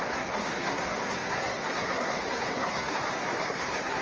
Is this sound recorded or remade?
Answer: remade